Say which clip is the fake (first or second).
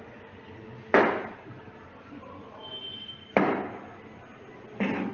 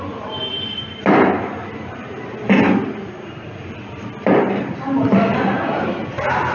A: second